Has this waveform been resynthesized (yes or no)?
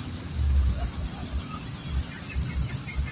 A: no